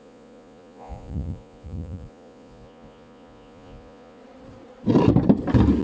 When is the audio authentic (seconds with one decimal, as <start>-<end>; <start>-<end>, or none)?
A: 4.2-5.8